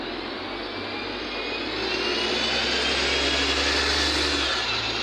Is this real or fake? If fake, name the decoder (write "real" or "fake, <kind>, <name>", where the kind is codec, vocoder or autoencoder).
real